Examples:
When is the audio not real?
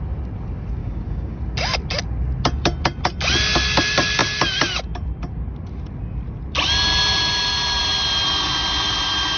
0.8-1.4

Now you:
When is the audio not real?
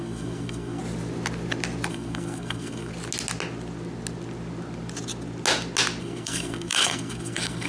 0.0-0.8; 1.9-2.9; 6.0-7.7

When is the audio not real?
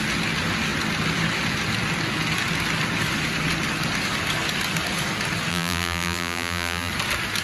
5.5-6.9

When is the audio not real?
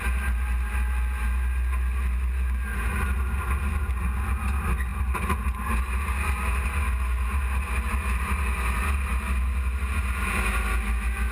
none